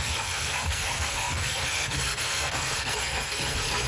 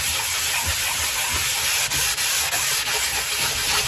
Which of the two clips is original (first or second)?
second